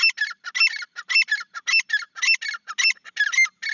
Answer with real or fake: real